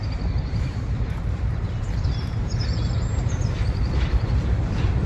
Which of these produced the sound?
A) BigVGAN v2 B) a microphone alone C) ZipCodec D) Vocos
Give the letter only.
A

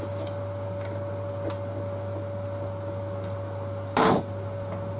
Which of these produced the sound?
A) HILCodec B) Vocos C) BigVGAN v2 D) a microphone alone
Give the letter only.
D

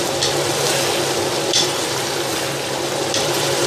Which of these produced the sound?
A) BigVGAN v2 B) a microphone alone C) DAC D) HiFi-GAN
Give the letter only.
A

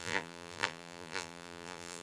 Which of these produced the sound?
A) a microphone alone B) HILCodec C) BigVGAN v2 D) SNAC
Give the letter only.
C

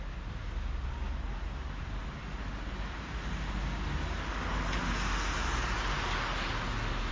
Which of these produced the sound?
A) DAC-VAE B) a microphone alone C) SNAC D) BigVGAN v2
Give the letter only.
B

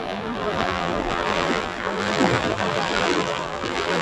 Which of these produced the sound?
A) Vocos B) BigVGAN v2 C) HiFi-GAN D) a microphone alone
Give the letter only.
B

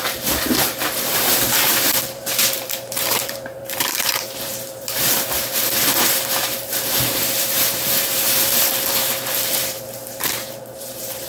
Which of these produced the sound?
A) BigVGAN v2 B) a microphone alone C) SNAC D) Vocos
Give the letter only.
A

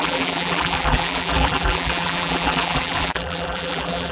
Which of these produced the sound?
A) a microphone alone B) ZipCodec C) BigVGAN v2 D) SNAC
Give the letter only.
C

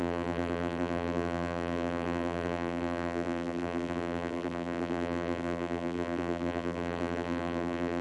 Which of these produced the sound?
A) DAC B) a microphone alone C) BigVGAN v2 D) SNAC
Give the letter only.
C